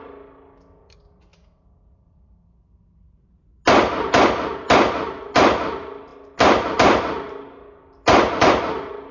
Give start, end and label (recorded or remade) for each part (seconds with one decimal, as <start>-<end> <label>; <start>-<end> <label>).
0.0-9.1 recorded